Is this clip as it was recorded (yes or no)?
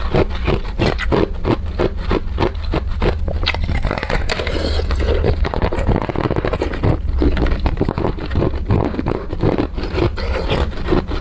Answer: yes